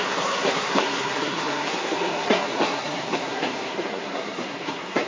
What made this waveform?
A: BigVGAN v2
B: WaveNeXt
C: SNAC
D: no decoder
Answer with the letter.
C